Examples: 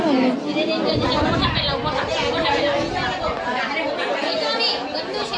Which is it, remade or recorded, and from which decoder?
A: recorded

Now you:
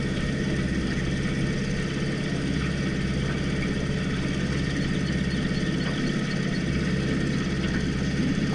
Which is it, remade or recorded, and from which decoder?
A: recorded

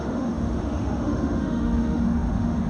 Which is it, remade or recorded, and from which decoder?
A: remade, autoencoder, DAC-VAE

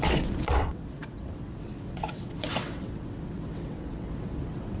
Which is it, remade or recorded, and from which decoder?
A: remade, vocoder, WaveNeXt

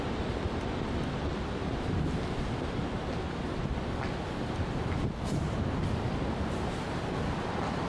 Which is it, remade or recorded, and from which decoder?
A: recorded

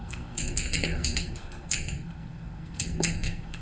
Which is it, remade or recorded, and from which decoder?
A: remade, codec, SNAC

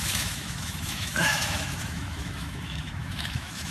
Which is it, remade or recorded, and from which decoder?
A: remade, autoencoder, DAC-VAE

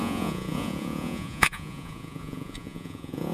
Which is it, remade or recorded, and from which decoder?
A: remade, vocoder, Vocos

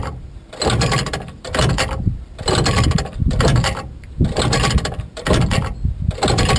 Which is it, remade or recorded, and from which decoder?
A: remade, vocoder, BigVGAN v2